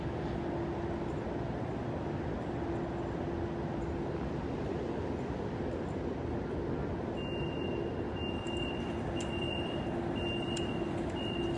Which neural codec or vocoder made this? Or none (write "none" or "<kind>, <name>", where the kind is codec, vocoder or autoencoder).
none